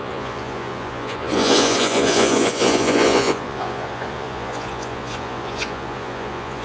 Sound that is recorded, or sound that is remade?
remade